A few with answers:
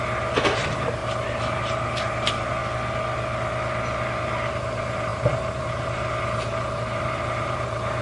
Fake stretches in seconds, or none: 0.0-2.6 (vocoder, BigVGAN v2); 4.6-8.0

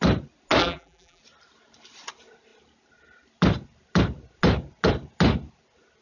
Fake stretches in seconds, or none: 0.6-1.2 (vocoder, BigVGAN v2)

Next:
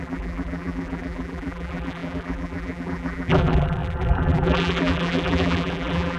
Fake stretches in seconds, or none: 0.0-6.2 (vocoder, BigVGAN v2)